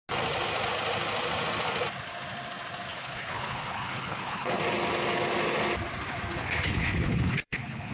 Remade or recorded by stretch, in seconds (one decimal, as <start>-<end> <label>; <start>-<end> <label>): 0.0-2.9 recorded; 2.9-4.6 remade; 4.6-6.4 recorded; 6.4-7.9 remade